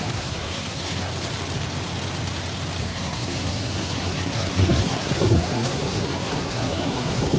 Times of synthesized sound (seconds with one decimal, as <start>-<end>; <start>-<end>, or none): 0.0-1.1; 2.8-7.4

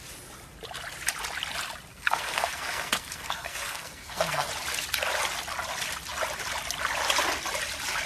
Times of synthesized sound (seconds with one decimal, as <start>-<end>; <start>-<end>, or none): 1.9-4.5